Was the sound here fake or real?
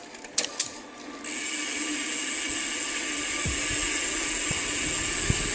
real